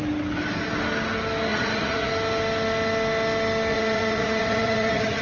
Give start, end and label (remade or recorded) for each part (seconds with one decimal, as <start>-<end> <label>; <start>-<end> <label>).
0.0-1.5 recorded; 1.5-2.1 remade; 2.1-3.7 recorded; 3.7-5.2 remade